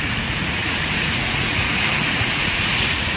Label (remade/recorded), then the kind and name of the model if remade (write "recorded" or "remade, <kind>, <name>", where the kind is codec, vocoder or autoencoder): remade, vocoder, Vocos